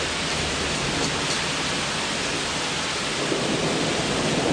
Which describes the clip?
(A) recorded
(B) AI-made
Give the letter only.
A